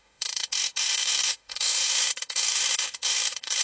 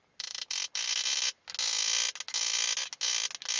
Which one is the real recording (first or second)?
second